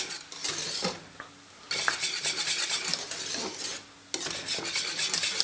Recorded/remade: recorded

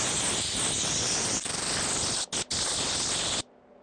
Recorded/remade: recorded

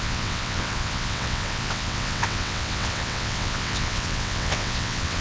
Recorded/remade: remade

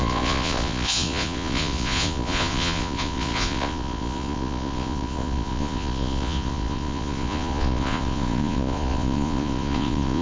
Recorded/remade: remade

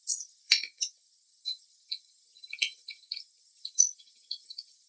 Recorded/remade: remade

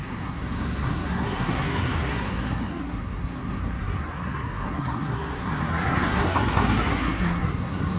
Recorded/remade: remade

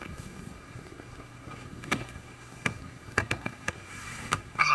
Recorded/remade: remade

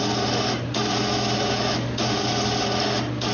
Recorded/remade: recorded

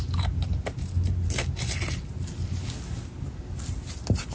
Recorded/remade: recorded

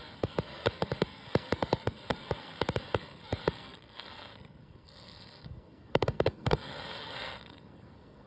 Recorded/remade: remade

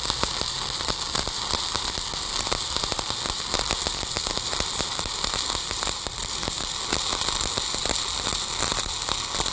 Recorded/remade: recorded